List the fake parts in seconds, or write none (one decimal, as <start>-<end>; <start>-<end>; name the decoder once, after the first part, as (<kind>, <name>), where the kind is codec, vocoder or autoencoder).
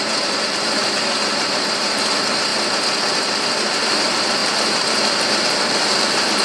0.0-2.5 (vocoder, BigVGAN v2); 3.2-6.4